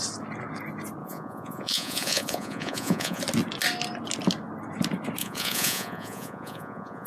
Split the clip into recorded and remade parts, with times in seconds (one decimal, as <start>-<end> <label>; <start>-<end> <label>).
0.0-1.0 recorded; 1.0-3.2 remade; 3.2-5.2 recorded; 5.2-7.1 remade